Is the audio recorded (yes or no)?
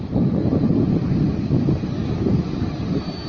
yes